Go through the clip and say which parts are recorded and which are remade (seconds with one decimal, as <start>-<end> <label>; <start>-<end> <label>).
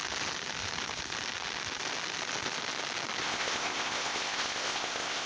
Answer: 0.0-3.2 recorded; 3.2-5.3 remade